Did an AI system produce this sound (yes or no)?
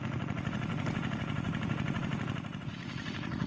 yes